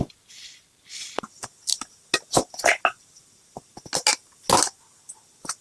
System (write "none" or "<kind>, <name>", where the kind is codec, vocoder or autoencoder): none